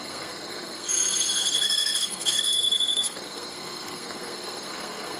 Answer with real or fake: fake